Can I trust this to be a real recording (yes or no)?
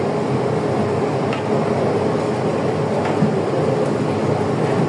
yes